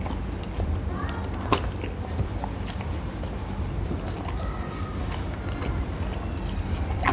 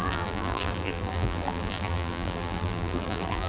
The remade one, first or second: second